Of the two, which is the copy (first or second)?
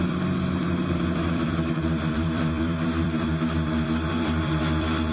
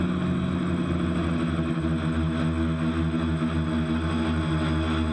first